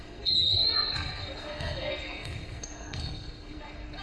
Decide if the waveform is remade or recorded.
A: remade